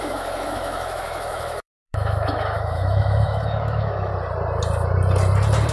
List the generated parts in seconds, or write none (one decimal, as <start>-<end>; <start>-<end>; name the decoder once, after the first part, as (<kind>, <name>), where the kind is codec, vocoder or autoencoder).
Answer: 0.0-4.1 (autoencoder, DAC-VAE)